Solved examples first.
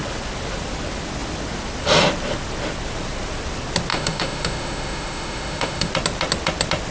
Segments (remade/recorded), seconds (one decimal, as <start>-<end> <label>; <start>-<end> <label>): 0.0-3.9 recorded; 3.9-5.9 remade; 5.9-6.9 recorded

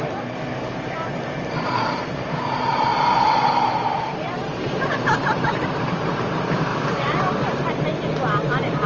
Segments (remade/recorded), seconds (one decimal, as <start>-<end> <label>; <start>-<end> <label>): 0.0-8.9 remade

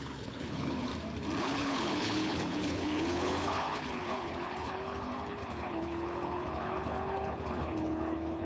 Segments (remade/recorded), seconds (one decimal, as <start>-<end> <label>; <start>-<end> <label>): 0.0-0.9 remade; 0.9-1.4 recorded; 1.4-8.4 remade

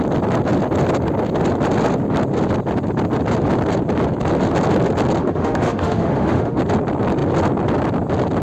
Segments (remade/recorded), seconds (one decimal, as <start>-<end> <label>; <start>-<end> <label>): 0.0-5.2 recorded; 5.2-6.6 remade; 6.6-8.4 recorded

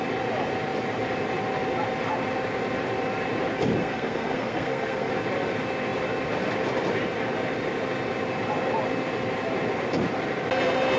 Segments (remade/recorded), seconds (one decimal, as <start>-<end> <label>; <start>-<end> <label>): 0.0-3.8 recorded; 3.8-5.1 remade; 5.1-11.0 recorded